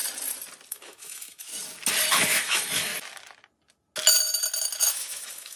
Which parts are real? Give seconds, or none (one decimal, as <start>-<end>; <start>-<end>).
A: 0.0-0.7; 1.5-2.1; 2.9-4.9

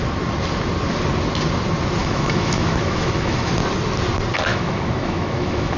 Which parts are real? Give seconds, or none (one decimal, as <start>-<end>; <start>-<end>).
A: 0.0-2.0; 3.5-4.5

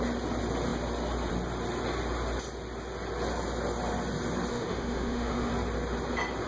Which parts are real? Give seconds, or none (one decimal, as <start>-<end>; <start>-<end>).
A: 0.0-4.5; 5.5-6.5

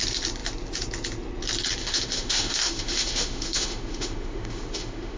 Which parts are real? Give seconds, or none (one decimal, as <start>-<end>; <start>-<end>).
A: 0.0-1.8

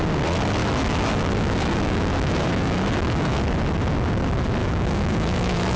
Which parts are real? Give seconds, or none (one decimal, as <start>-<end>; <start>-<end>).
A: 0.0-0.6; 3.4-4.6